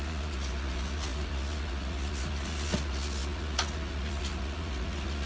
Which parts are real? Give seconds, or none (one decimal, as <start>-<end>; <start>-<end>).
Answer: none